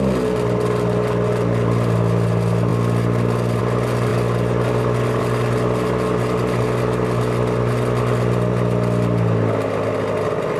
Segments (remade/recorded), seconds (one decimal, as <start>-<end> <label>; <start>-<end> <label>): 0.0-10.6 recorded